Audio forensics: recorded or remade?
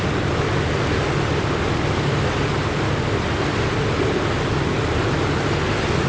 recorded